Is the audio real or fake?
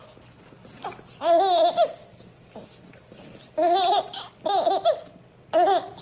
real